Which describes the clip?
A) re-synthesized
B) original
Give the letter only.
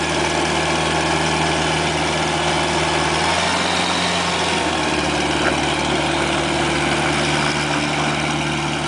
B